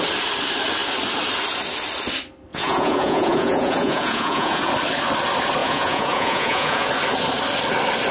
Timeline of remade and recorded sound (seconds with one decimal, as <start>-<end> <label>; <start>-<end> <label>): 0.0-2.5 recorded; 2.5-4.7 remade; 4.7-5.6 recorded; 5.6-6.9 remade; 6.9-8.1 recorded